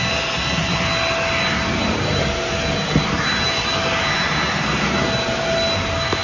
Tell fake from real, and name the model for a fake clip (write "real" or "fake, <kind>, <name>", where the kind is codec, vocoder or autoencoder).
real